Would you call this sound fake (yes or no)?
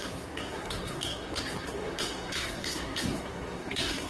yes